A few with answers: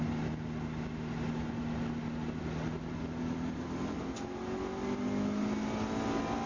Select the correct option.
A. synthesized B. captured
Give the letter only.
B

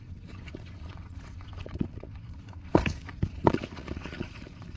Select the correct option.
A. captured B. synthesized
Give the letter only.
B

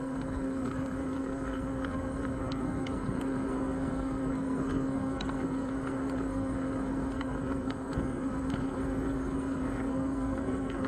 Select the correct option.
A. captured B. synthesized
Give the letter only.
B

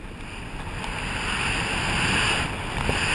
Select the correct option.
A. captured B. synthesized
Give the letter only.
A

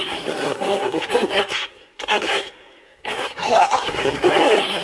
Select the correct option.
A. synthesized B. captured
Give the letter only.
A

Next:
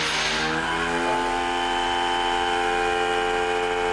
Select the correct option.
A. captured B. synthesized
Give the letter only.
A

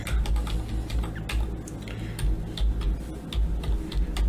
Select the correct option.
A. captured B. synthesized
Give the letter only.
A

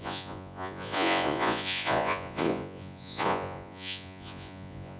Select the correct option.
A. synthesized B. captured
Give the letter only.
A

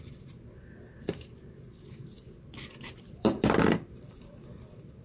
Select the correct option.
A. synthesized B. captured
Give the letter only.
A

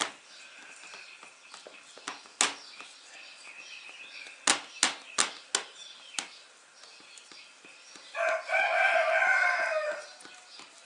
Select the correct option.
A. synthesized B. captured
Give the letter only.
B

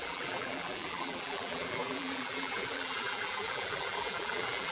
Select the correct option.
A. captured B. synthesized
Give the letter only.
B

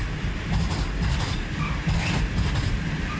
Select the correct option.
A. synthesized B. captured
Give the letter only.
B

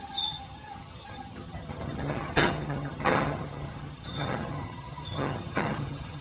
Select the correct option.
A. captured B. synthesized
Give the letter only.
B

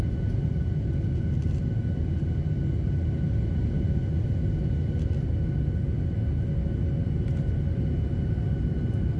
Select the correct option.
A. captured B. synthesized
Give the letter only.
A